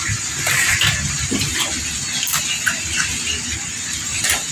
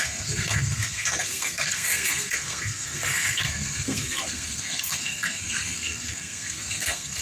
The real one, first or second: first